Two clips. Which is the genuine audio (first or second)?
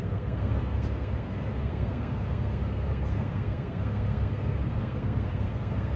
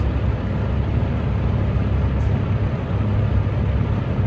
second